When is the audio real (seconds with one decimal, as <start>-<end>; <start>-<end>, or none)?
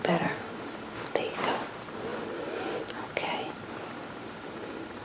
none